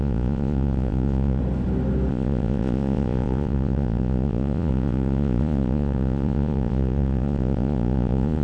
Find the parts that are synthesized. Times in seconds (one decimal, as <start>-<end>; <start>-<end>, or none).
0.0-1.4; 2.1-8.4